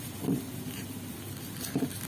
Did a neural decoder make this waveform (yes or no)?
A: no